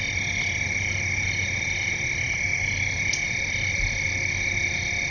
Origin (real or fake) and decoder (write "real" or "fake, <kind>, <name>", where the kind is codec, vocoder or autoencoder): real